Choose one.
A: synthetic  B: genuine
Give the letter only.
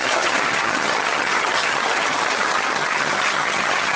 A